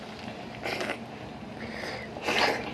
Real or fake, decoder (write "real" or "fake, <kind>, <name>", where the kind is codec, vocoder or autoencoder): real